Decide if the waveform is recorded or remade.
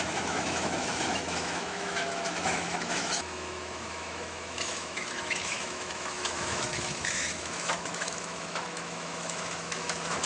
remade